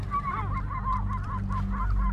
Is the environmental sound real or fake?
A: real